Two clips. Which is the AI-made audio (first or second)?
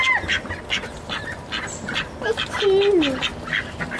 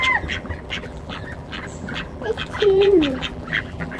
second